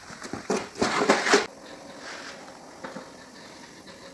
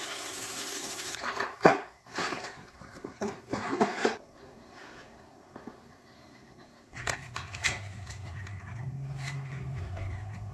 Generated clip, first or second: second